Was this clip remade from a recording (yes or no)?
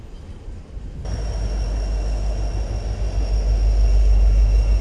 no